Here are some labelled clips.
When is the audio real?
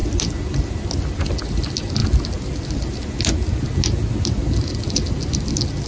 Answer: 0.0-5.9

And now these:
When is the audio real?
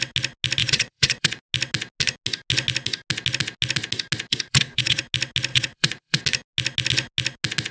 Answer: 0.0-0.6; 1.4-4.3; 5.0-5.5; 6.2-7.7